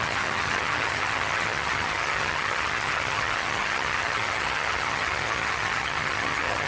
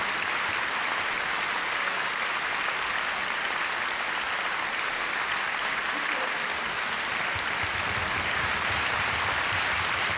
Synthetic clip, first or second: first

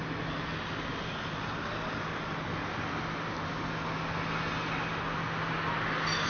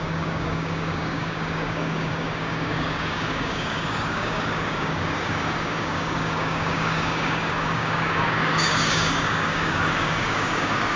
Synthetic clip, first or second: second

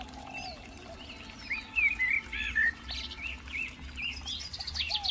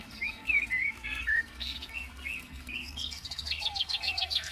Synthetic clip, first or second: second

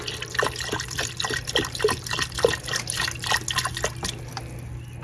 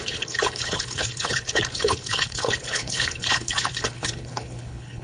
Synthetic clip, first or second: second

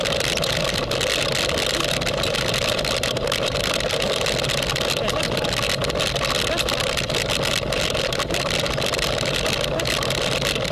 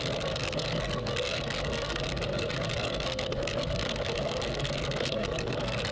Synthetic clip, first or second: second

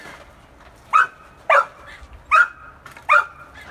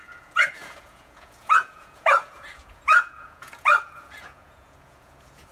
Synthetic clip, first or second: second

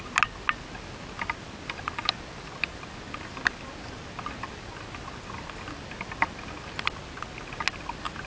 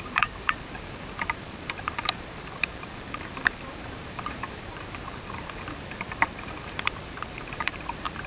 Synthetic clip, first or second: second